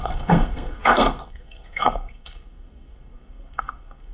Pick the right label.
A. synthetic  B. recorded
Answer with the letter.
A